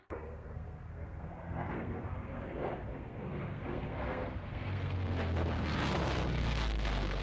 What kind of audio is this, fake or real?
fake